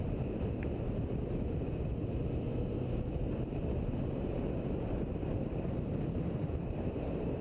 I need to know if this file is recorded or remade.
remade